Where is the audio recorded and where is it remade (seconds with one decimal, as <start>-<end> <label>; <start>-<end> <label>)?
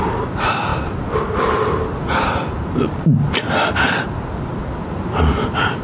0.0-5.8 recorded